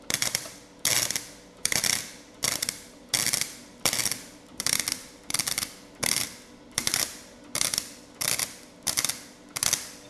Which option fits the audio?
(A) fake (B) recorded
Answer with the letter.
A